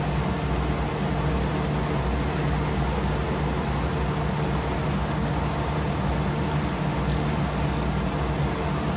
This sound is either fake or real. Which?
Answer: real